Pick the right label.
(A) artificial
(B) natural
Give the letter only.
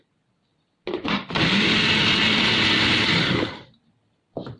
B